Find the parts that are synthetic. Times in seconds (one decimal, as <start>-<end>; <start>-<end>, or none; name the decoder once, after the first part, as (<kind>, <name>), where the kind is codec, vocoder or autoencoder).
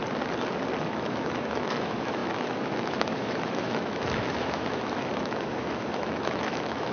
0.9-6.9 (autoencoder, DAC-VAE)